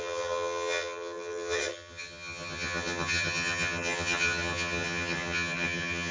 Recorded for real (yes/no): no